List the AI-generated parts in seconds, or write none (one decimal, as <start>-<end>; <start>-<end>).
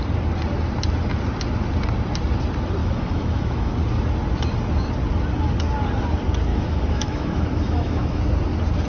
2.8-3.7; 6.5-8.2